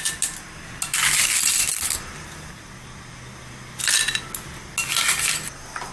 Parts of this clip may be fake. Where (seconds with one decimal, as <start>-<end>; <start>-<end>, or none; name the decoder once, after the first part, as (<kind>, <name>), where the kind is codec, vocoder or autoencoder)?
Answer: none